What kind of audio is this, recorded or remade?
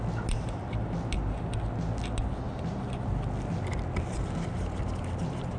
recorded